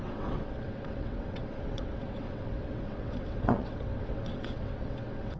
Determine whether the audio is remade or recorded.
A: remade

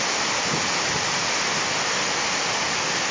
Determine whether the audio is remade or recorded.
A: recorded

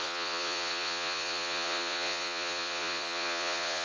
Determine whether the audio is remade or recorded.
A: remade